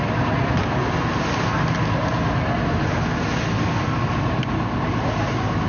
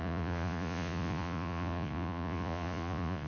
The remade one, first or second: second